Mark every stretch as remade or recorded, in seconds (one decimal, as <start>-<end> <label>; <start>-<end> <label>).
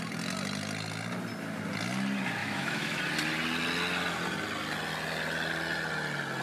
0.0-2.4 recorded; 2.4-3.0 remade; 3.0-6.4 recorded